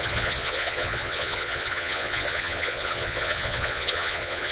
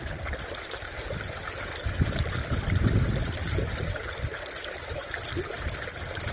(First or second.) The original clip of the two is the second